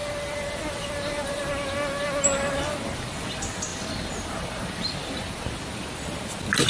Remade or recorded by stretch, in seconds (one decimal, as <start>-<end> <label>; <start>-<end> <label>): 0.0-6.7 recorded